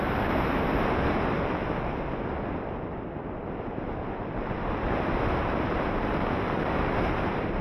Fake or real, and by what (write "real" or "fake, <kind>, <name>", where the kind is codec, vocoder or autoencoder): real